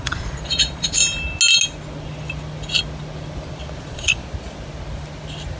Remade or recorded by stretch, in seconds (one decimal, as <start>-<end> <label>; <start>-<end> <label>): 0.0-1.0 remade; 1.0-3.8 recorded; 3.8-4.2 remade; 4.2-5.6 recorded